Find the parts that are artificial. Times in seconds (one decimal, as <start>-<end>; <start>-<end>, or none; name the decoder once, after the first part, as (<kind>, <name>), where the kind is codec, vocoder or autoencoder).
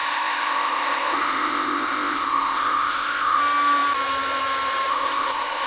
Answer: 0.0-3.4 (codec, ZipCodec); 4.9-5.7